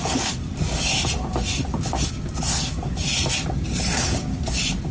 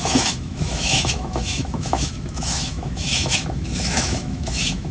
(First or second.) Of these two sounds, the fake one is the second